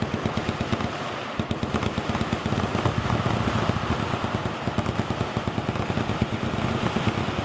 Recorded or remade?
recorded